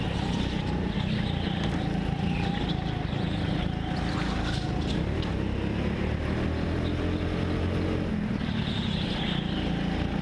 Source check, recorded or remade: recorded